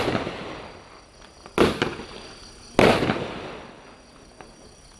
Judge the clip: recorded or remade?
recorded